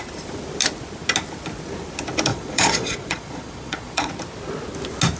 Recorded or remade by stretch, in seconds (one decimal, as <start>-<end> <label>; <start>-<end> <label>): 0.0-2.3 recorded; 2.3-4.1 remade; 4.1-5.2 recorded